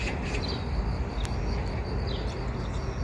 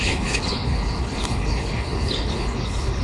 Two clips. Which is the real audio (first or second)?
first